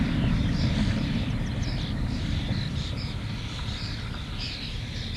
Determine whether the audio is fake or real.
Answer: fake